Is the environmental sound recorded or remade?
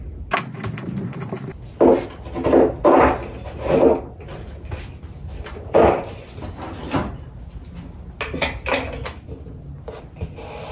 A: recorded